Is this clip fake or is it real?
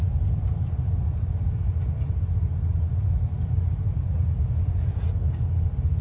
real